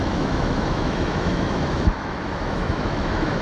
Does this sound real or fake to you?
fake